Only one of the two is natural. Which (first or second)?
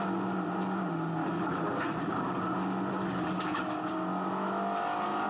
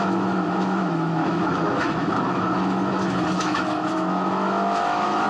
first